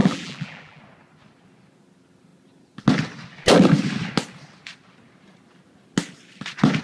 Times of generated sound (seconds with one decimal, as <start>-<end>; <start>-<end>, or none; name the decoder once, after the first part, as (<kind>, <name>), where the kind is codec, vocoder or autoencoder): 0.0-0.8 (vocoder, BigVGAN v2)